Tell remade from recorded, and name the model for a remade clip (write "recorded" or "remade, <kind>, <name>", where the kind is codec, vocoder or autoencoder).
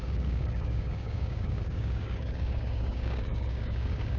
remade, codec, DAC